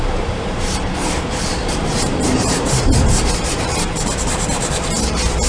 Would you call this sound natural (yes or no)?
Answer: no